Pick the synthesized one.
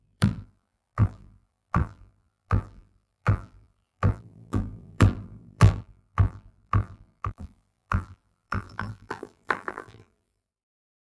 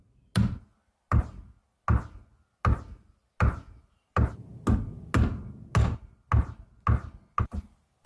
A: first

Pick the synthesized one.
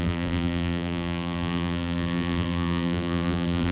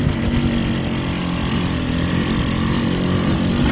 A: first